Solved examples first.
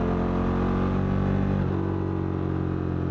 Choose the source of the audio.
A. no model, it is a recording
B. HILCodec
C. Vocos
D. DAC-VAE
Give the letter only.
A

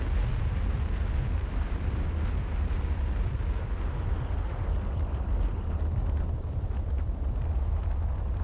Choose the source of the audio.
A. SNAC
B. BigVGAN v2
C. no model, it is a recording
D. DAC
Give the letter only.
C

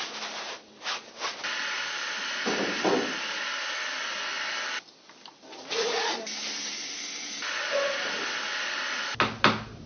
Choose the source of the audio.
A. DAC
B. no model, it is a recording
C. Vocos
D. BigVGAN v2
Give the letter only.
B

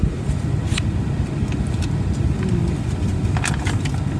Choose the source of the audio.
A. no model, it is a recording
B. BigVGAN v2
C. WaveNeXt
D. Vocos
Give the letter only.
A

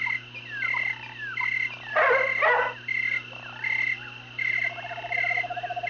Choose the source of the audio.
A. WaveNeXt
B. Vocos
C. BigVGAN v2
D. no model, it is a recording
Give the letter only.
D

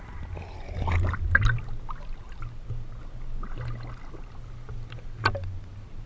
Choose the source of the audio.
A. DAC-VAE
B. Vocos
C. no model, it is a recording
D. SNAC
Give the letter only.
C